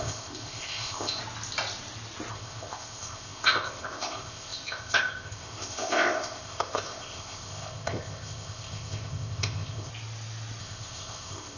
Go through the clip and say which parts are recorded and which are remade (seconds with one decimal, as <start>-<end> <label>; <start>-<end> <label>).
0.0-1.2 remade; 1.2-2.3 recorded; 2.3-9.9 remade; 9.9-10.6 recorded; 10.6-11.6 remade